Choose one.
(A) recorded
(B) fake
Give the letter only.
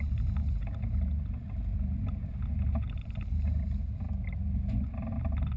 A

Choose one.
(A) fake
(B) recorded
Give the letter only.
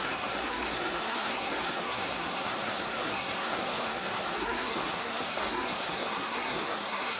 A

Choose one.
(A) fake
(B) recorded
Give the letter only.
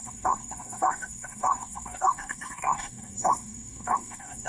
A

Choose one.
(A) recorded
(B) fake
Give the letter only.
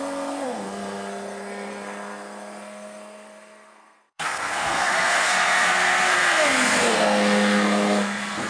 B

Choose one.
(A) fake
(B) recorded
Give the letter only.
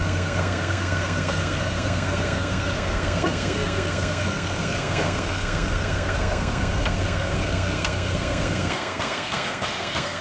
A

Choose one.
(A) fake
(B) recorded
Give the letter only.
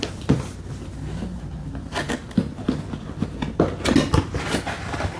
B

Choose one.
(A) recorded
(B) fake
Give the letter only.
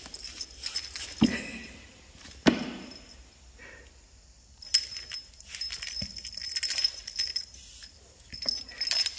A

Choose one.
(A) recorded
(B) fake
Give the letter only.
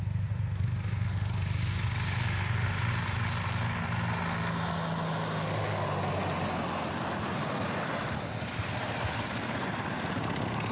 A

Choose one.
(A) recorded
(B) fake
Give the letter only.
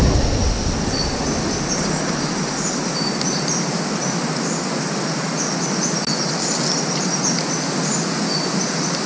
A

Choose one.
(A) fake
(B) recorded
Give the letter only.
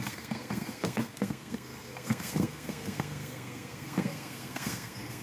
A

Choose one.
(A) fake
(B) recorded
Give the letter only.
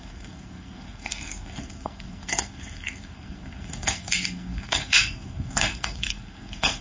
A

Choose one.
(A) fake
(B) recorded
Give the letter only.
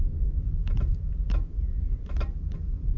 B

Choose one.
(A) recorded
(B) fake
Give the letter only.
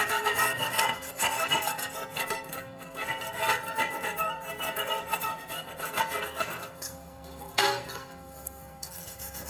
B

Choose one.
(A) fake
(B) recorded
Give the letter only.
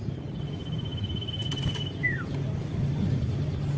B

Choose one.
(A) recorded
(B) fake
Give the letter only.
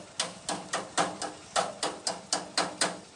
A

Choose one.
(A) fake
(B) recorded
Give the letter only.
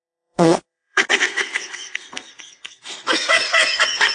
A